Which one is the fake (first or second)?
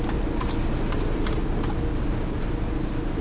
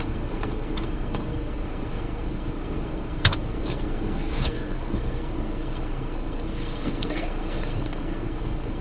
second